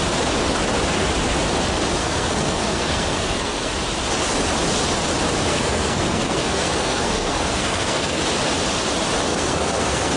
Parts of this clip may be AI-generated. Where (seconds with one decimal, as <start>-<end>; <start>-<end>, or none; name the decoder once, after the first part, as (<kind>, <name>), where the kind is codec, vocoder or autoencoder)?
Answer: 2.0-3.7 (codec, SNAC); 5.5-8.2; 9.3-10.2